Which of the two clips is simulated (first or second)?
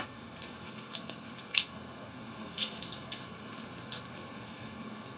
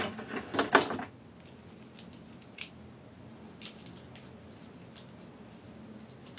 first